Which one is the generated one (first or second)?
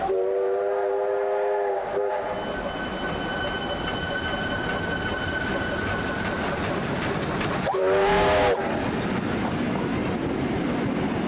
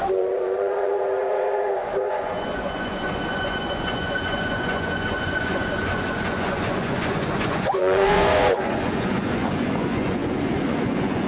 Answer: second